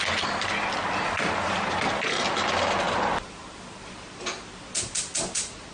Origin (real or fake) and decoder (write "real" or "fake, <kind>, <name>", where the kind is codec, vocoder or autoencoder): real